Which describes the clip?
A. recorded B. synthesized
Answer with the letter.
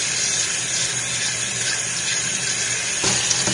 A